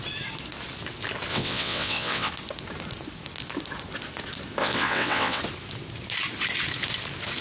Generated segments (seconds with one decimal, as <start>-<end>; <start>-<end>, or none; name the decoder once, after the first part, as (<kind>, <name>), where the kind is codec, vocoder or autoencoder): 1.3-2.3 (vocoder, WaveNeXt); 4.6-5.4